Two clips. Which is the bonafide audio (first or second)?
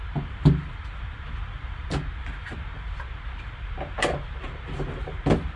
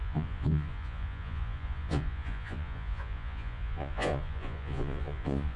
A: first